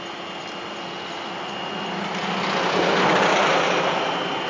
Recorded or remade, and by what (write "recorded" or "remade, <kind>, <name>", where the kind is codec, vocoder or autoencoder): recorded